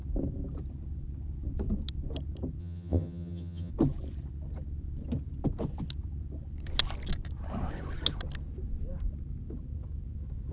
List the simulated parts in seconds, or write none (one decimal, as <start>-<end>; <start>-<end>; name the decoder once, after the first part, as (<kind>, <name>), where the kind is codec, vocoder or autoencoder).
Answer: 2.6-3.7 (vocoder, HiFi-GAN)